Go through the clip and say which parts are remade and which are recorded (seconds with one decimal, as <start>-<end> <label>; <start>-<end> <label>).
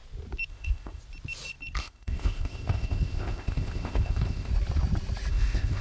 0.0-0.5 recorded; 0.5-1.0 remade; 1.0-1.8 recorded; 1.8-4.5 remade; 4.5-5.3 recorded; 5.3-5.8 remade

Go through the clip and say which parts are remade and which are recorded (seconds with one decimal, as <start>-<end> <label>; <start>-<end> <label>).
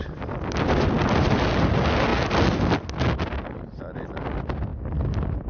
0.0-5.5 recorded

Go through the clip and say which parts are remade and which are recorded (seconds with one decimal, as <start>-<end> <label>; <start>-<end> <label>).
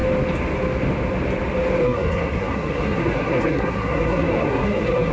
0.0-1.8 recorded; 1.8-5.1 remade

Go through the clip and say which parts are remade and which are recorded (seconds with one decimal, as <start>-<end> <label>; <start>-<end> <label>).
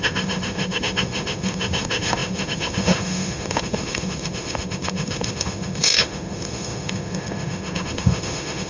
0.0-8.7 remade